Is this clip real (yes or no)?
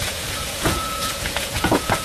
no